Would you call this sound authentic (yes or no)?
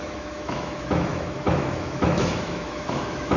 no